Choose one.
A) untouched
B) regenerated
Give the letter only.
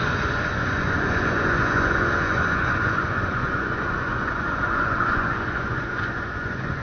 B